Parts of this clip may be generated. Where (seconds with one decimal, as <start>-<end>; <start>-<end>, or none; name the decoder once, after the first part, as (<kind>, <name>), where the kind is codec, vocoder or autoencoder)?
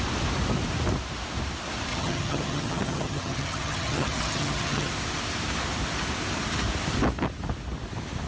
1.9-4.9 (vocoder, HiFi-GAN)